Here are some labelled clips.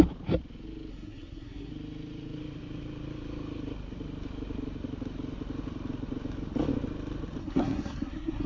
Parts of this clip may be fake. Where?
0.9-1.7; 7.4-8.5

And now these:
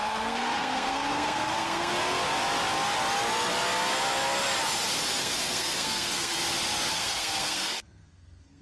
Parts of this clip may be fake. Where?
0.0-1.9; 5.2-6.4; 6.9-8.6

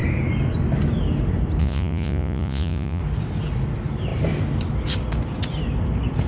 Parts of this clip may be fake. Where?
1.6-3.0

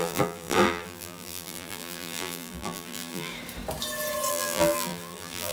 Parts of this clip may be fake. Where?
0.0-3.3; 4.3-5.5

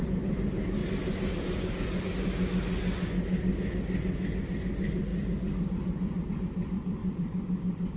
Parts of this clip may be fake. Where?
0.8-1.4; 7.0-8.0

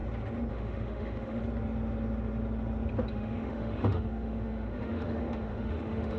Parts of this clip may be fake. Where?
0.5-1.4; 3.1-6.2

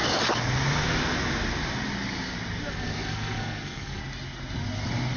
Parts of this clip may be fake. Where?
2.7-4.0

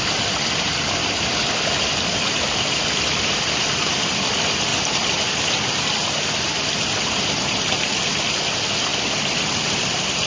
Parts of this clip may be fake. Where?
0.0-4.7; 5.8-10.3